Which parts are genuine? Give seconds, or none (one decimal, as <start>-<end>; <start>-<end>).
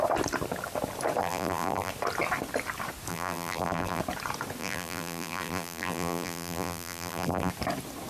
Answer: 0.0-1.2; 1.9-3.1; 4.0-4.6; 7.5-8.1